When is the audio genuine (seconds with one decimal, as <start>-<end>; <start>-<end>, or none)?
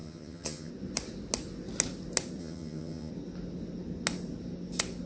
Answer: 0.7-2.4; 3.1-5.1